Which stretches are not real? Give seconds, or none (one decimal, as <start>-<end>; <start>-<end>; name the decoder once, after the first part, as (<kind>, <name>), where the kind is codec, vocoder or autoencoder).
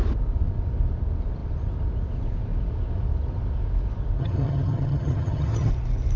4.2-5.7 (vocoder, HiFi-GAN)